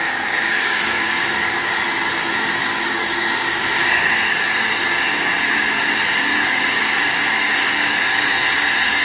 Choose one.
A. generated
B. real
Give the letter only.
A